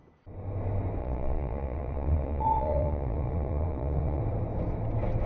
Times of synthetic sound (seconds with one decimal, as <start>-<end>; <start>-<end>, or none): 1.0-4.2